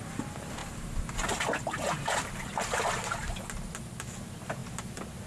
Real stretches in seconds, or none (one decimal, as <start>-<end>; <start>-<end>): 0.0-5.3